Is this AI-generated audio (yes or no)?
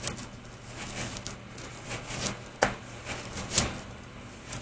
no